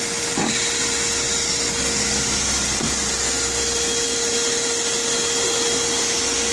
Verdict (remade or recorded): recorded